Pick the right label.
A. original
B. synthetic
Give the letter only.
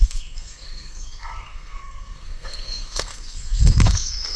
B